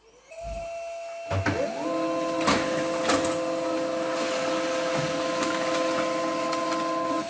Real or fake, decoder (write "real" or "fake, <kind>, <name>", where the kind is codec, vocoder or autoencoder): real